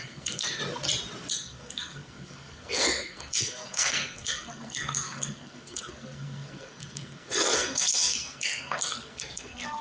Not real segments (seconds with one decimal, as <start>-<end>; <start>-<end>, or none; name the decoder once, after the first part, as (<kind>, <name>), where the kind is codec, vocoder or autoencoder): 0.0-0.6 (codec, SNAC); 1.3-9.8